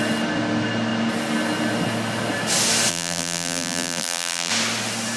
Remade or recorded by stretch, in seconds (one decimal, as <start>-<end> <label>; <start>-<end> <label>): 0.0-2.9 recorded; 2.9-4.5 remade; 4.5-5.2 recorded